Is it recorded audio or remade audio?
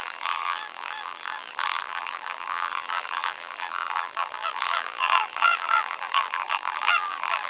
remade